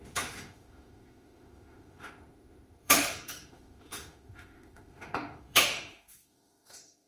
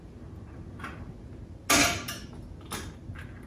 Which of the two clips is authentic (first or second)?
second